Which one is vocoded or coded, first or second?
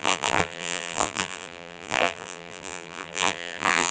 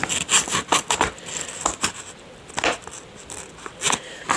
first